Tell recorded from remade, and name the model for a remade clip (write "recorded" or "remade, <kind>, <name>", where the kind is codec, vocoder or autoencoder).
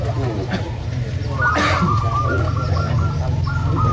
recorded